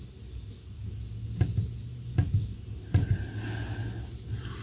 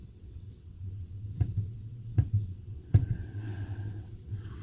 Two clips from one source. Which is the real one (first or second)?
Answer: first